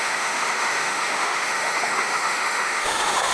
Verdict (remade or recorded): remade